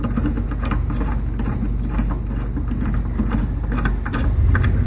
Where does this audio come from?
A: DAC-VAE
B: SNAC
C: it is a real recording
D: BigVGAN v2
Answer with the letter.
C